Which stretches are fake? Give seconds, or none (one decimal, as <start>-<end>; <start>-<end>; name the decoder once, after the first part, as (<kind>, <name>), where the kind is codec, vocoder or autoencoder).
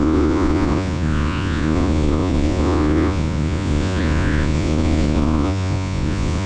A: 0.0-6.5 (vocoder, Vocos)